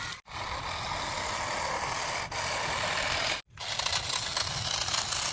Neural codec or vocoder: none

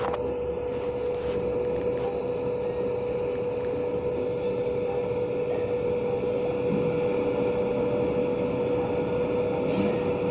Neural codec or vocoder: none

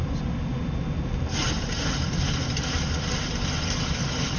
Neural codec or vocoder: none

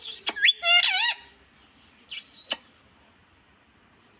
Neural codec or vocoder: none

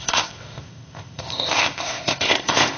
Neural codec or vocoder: codec, ZipCodec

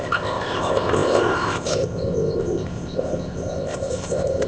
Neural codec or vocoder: codec, ZipCodec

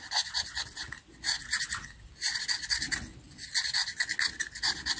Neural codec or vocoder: none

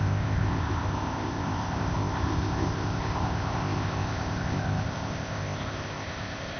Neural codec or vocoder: codec, ZipCodec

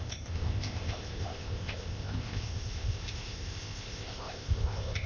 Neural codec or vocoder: codec, ZipCodec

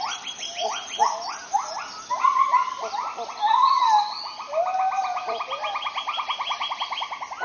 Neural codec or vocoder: none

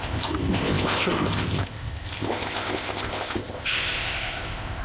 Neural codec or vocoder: codec, ZipCodec